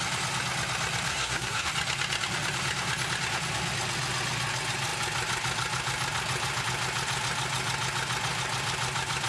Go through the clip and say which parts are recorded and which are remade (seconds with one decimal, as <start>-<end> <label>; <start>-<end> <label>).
0.0-1.1 recorded; 1.1-1.7 remade; 1.7-9.3 recorded